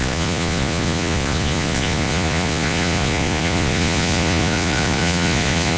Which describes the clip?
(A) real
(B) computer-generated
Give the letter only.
B